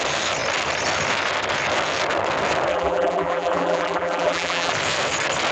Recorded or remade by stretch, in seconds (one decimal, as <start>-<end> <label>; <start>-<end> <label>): 0.0-2.7 recorded; 2.7-4.7 remade; 4.7-5.5 recorded